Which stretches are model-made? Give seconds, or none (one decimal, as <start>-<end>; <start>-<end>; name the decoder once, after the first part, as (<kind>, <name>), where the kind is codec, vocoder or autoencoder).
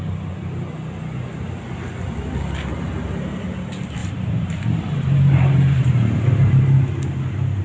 4.0-6.6 (vocoder, BigVGAN v2)